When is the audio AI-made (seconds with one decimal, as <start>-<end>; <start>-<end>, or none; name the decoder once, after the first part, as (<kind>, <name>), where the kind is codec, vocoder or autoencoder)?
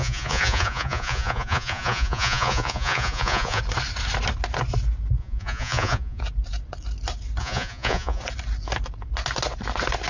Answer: 0.0-3.6 (vocoder, Vocos); 5.2-6.2; 7.4-8.2